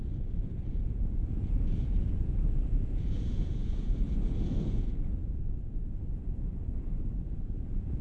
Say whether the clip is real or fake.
fake